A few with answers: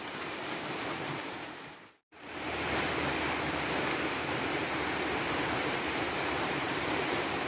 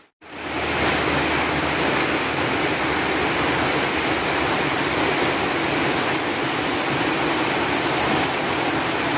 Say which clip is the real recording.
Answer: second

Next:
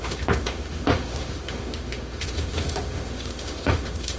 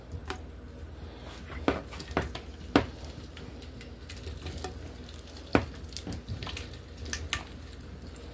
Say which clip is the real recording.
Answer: second